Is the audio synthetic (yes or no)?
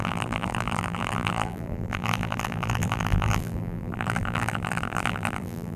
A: yes